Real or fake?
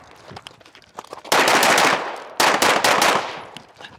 real